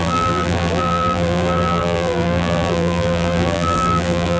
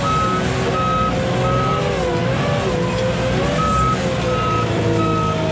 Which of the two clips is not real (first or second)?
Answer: first